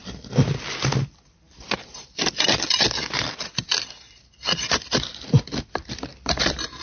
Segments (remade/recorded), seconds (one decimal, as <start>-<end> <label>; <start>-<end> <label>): 0.0-0.8 recorded; 0.8-6.8 remade